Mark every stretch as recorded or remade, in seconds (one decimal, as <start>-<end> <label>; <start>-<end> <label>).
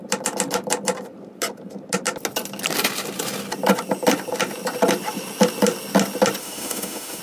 0.0-6.4 recorded; 6.4-7.2 remade